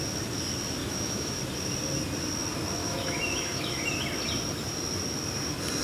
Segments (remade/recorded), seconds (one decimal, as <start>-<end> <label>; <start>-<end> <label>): 0.0-0.8 recorded; 0.8-1.4 remade; 1.4-2.8 recorded; 2.8-3.8 remade; 3.8-5.8 recorded